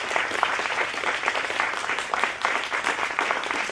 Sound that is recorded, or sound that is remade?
remade